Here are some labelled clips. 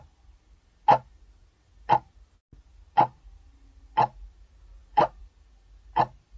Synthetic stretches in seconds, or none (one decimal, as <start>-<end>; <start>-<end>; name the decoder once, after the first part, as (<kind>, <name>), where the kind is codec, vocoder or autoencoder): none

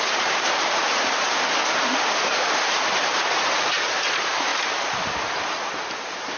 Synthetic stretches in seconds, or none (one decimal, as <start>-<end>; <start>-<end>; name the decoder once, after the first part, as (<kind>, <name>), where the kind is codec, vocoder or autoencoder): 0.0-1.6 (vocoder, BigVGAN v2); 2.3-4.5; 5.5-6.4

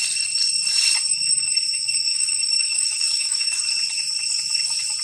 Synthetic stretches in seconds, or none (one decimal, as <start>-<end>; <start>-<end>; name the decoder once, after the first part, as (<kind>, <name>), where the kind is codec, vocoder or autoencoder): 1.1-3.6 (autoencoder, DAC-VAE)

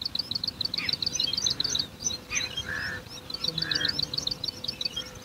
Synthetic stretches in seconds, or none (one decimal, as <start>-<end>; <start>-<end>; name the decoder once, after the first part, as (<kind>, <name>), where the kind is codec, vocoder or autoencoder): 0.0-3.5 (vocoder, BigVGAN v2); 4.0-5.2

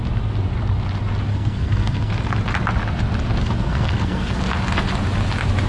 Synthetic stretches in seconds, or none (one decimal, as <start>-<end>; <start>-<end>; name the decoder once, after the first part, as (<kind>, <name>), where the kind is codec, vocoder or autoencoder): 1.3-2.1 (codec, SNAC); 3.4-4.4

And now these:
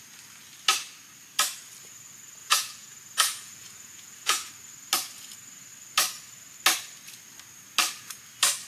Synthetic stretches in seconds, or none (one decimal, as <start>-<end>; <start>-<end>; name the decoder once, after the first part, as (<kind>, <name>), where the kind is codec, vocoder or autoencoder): 2.4-4.5 (vocoder, Vocos)